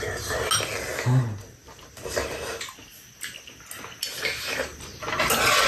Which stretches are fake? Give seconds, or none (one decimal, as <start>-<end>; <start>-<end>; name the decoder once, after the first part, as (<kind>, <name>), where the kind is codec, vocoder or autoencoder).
none